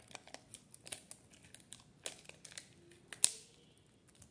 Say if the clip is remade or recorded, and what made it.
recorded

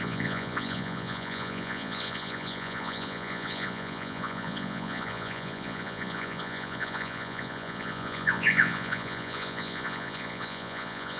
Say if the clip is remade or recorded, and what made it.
remade, vocoder, Vocos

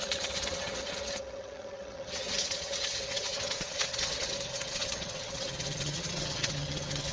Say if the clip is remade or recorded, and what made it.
remade, vocoder, HiFi-GAN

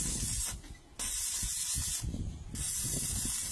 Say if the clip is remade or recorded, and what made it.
recorded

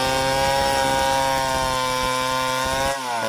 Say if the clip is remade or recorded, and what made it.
recorded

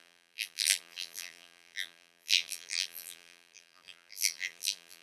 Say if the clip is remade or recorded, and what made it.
remade, vocoder, BigVGAN v2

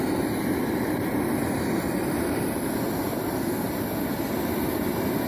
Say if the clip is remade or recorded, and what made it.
recorded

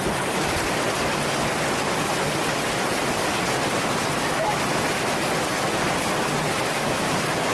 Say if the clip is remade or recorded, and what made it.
recorded